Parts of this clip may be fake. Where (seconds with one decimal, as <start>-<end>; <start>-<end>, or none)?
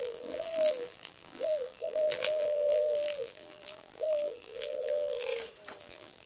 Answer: 0.0-5.3; 5.8-6.3